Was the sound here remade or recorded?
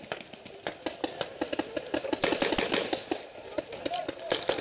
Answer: recorded